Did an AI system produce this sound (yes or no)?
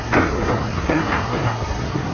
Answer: yes